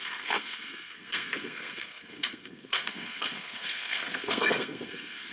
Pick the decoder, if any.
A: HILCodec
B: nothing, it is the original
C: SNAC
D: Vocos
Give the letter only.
C